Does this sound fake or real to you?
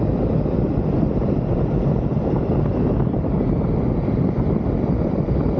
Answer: real